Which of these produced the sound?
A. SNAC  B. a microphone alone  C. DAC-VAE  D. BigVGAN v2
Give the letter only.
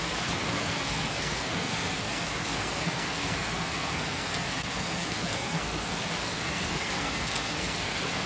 A